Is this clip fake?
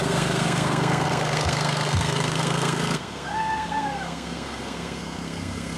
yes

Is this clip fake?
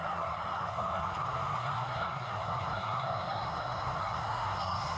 yes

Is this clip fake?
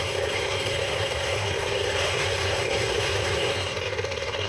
yes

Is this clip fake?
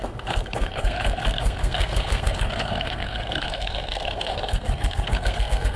yes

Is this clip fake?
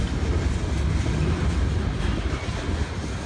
no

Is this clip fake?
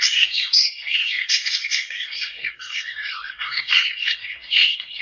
yes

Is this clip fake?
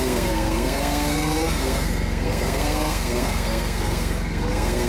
yes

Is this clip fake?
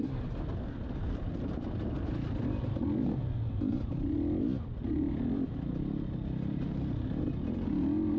no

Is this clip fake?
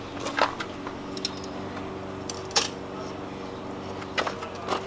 no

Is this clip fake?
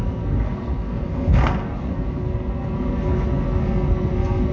yes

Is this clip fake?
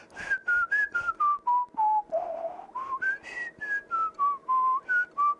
no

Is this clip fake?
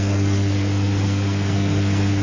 yes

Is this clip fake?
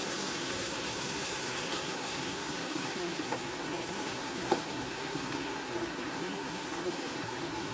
yes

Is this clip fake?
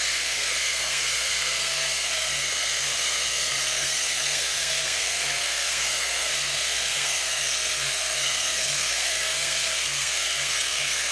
yes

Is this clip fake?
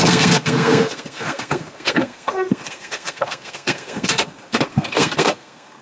yes